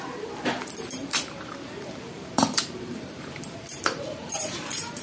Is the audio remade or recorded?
remade